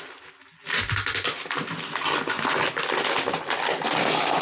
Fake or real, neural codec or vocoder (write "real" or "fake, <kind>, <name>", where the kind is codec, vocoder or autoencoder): real